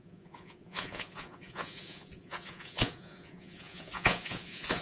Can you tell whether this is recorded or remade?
remade